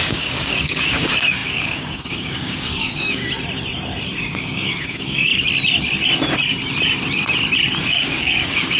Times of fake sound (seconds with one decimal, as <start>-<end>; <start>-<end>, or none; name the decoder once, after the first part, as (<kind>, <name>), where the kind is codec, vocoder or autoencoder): 0.0-3.2 (codec, DAC); 4.2-5.3; 7.8-8.8